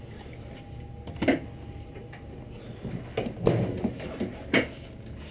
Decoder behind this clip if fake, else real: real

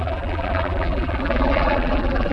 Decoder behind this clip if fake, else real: fake, vocoder, BigVGAN v2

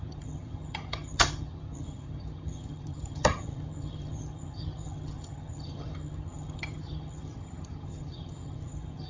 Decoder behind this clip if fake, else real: fake, vocoder, HiFi-GAN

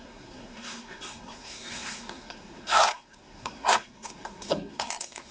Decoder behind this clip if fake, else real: fake, codec, SNAC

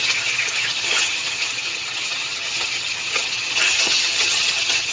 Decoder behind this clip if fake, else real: fake, vocoder, HiFi-GAN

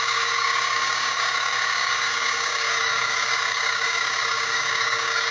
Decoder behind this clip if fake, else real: fake, codec, DAC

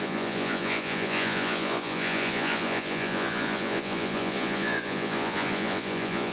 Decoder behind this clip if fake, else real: fake, vocoder, Vocos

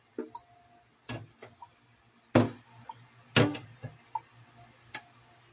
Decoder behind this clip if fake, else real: real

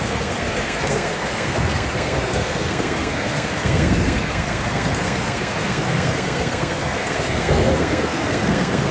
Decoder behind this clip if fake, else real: fake, codec, SNAC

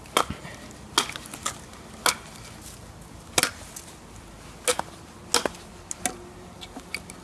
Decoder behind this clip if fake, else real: real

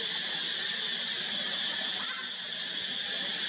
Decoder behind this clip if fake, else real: real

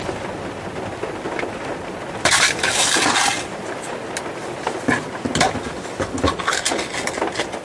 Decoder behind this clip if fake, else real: real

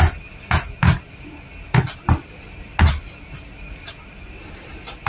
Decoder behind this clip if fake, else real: real